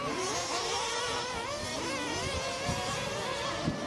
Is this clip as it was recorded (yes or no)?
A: yes